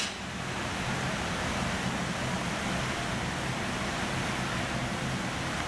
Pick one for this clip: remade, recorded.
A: recorded